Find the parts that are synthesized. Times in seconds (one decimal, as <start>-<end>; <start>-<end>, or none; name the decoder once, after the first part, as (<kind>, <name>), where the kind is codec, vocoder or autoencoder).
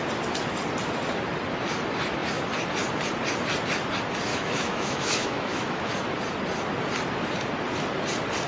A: 4.3-5.9 (autoencoder, DAC-VAE)